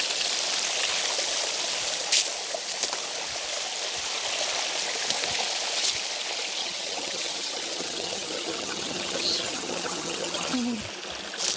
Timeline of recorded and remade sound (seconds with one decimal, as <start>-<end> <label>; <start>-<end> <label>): 0.0-6.6 recorded; 6.6-10.8 remade; 10.8-11.6 recorded